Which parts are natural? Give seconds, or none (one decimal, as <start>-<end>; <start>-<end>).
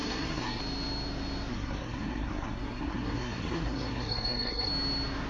0.6-1.5; 4.7-5.3